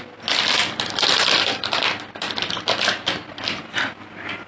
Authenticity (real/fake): real